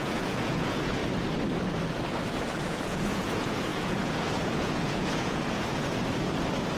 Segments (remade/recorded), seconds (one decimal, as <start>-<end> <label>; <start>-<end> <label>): 0.0-1.0 remade; 1.0-2.3 recorded; 2.3-6.0 remade; 6.0-6.8 recorded